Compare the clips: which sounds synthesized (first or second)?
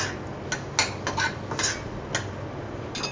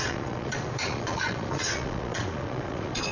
second